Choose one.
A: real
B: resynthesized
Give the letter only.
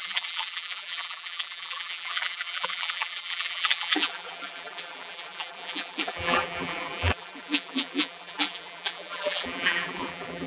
B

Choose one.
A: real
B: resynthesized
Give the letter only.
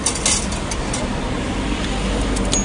A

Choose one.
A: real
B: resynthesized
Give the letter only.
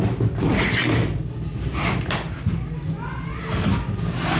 A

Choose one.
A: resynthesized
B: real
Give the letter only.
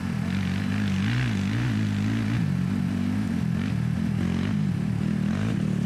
B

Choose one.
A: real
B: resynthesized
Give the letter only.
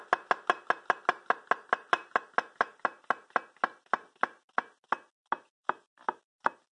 A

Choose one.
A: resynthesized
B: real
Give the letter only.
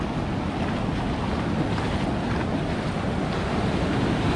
B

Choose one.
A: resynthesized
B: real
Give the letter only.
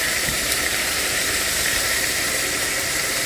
A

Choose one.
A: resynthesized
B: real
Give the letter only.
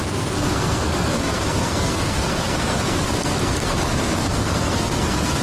A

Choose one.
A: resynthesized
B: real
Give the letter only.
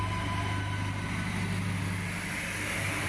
B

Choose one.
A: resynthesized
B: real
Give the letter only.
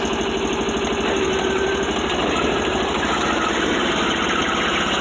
B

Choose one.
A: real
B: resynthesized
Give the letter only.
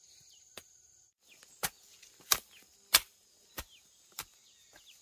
A